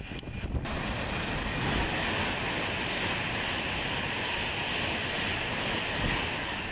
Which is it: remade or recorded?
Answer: recorded